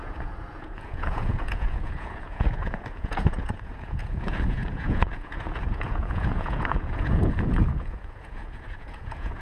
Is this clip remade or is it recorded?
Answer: remade